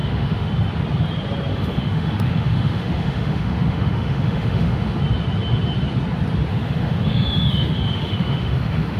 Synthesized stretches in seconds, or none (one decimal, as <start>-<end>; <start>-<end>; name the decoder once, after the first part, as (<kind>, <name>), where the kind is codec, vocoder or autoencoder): 0.0-0.5 (autoencoder, DAC-VAE); 1.5-5.0; 6.5-9.0